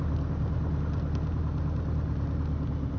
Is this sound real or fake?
real